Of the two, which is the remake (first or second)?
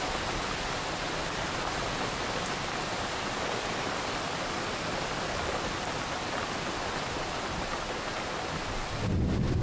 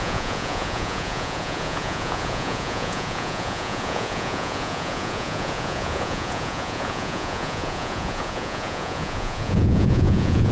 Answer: second